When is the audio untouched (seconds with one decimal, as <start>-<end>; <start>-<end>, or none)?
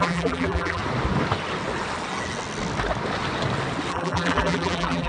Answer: 0.8-3.9